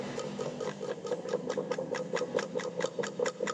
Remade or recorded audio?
recorded